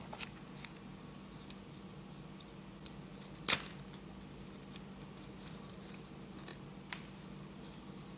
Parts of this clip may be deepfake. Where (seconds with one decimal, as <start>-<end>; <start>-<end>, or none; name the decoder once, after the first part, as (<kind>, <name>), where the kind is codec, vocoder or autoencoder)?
none